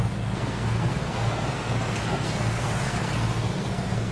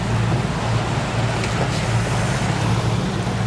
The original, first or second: second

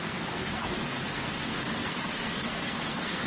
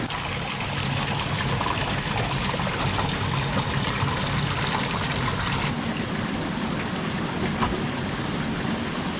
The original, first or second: second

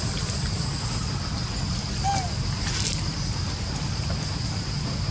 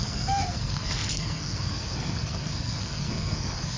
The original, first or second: first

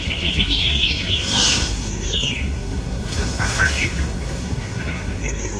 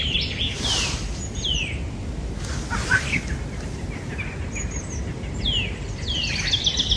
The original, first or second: second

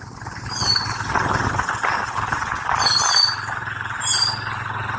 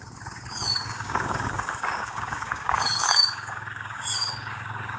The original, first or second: first